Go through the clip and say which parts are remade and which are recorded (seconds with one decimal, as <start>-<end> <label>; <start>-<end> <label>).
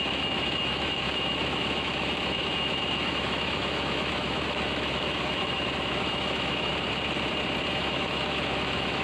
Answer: 0.0-6.7 remade; 6.7-7.7 recorded; 7.7-9.0 remade